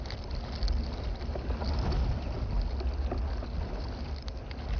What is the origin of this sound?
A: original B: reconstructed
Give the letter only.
A